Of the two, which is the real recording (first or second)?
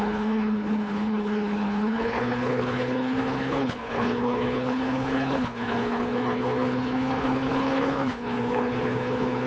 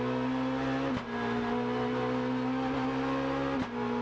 second